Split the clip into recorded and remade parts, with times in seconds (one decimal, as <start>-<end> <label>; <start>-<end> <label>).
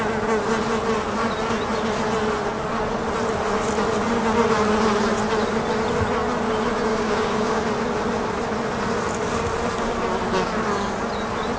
0.0-6.9 recorded; 6.9-7.6 remade; 7.6-11.6 recorded